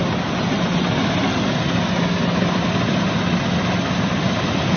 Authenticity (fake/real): real